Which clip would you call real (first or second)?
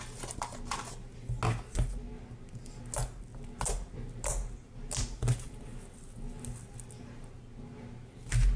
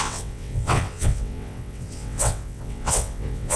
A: first